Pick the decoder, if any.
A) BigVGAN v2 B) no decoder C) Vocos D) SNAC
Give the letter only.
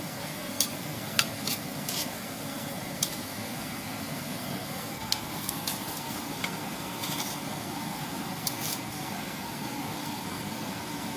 D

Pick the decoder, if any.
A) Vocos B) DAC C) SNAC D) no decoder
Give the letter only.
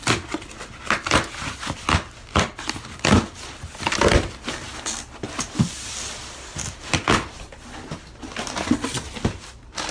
D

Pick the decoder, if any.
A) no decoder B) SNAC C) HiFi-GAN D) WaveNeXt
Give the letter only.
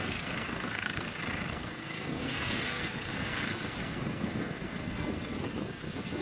B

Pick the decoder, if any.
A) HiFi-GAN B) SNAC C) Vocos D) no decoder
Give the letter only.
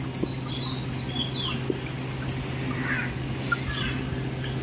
D